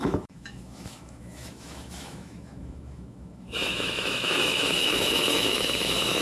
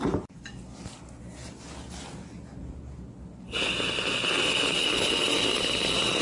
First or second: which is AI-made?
first